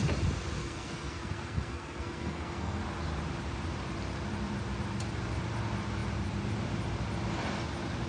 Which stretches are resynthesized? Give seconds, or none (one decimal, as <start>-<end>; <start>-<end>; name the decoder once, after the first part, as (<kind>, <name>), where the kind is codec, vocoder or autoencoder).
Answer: 0.6-2.8 (codec, SNAC)